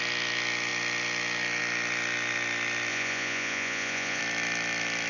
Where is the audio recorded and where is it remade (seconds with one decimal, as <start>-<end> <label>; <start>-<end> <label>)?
0.0-2.9 recorded; 2.9-4.2 remade; 4.2-5.1 recorded